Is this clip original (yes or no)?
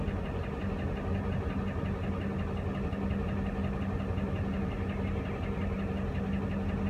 yes